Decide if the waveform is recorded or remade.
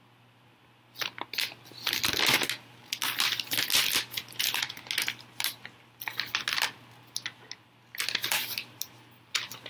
recorded